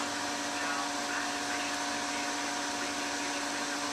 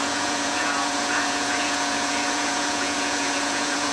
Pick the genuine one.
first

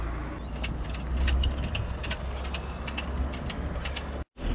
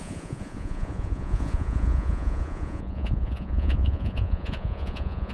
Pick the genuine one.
first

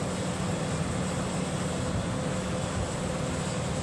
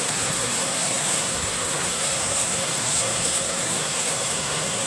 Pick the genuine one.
first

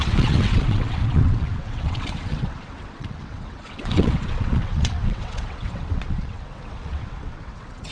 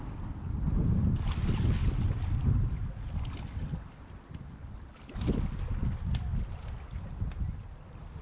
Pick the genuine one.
second